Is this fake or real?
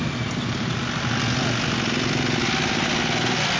real